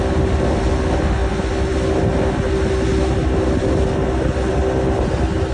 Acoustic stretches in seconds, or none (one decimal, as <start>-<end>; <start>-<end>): 0.0-5.5